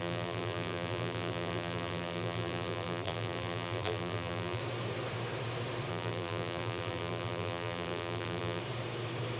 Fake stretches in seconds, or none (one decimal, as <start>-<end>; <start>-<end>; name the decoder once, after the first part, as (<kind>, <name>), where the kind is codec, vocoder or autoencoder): 0.0-4.6 (vocoder, BigVGAN v2); 5.9-8.6

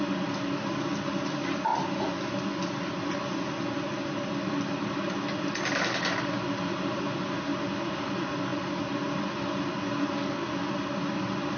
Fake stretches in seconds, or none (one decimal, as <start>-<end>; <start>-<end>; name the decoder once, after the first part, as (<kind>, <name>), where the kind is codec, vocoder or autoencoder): none